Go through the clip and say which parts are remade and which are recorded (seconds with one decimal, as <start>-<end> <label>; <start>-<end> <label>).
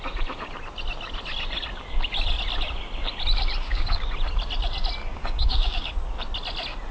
0.0-3.6 recorded; 3.6-4.1 remade; 4.1-5.0 recorded; 5.0-5.9 remade; 5.9-6.9 recorded